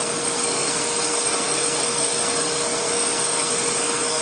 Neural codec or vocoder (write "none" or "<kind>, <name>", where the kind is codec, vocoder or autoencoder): codec, SNAC